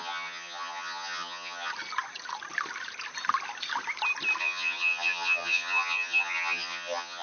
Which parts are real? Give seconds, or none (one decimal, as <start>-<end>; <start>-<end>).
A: 1.7-4.4